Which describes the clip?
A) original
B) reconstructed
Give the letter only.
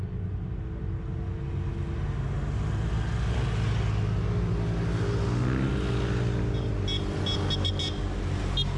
A